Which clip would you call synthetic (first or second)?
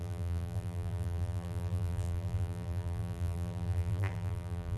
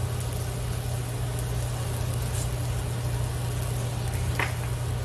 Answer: first